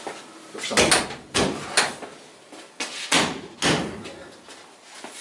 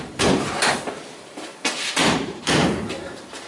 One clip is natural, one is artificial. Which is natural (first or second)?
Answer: first